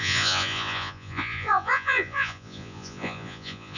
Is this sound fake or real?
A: fake